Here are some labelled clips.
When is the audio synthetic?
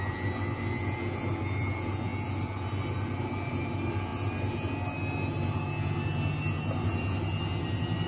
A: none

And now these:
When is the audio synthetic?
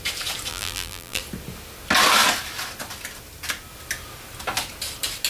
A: 0.5-1.2